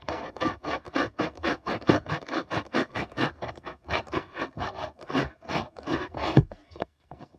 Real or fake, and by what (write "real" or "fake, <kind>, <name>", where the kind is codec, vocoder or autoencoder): fake, codec, SNAC